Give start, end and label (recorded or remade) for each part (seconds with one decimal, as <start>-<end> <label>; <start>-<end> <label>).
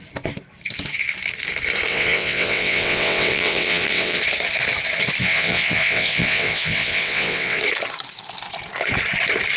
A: 0.0-1.9 recorded; 1.9-4.2 remade; 4.2-5.2 recorded; 5.2-7.6 remade; 7.6-9.6 recorded